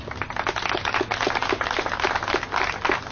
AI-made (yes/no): no